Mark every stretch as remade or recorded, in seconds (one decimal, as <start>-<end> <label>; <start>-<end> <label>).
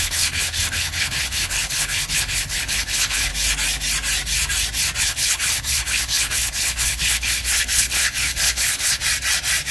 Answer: 0.0-3.3 remade; 3.3-5.0 recorded; 5.0-9.0 remade; 9.0-9.7 recorded